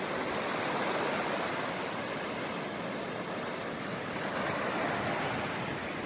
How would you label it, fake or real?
real